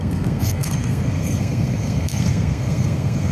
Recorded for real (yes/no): no